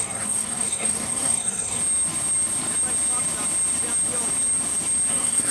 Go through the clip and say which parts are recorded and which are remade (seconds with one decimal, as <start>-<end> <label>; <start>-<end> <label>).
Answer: 0.0-1.8 remade; 1.8-5.1 recorded; 5.1-5.5 remade